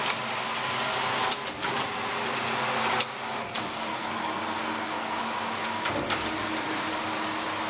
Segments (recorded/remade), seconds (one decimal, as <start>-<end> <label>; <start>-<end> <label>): 0.0-3.9 recorded; 3.9-5.2 remade; 5.2-7.7 recorded